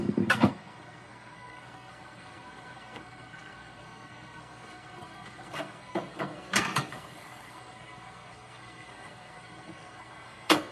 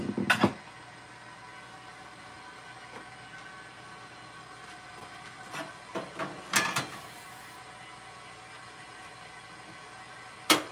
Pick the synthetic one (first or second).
first